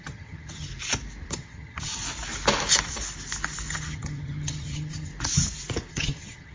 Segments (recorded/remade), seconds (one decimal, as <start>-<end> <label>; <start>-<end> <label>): 0.0-0.7 remade; 0.7-1.3 recorded; 1.3-2.0 remade; 2.0-3.7 recorded; 3.7-5.1 remade; 5.1-5.9 recorded; 5.9-6.5 remade